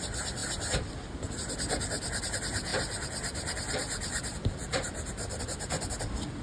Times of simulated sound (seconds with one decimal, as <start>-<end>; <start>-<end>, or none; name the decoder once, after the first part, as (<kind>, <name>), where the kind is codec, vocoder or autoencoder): 0.4-0.9 (vocoder, BigVGAN v2); 2.7-5.4